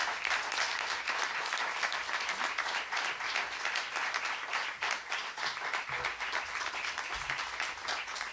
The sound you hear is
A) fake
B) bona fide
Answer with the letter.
A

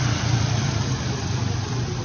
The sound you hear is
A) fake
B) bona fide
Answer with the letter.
B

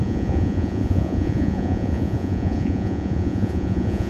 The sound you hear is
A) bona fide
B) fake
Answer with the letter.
B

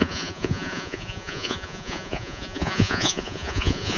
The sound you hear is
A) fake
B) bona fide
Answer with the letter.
A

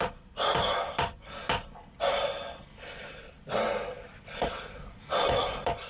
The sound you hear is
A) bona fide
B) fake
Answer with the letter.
A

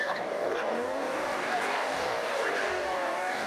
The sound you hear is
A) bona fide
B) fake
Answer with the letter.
B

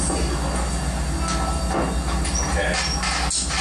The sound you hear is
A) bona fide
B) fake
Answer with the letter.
A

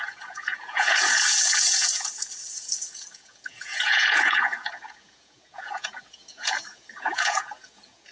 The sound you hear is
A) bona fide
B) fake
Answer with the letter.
B